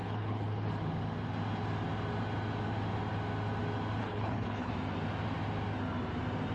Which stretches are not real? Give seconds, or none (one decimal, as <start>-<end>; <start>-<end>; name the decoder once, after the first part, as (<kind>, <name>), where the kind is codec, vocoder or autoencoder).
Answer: 0.0-0.7 (codec, HILCodec); 4.0-4.7